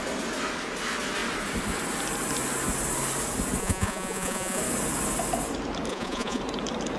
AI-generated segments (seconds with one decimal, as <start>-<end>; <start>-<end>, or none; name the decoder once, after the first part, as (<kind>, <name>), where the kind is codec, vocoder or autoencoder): 3.6-4.6 (vocoder, Vocos); 5.9-6.4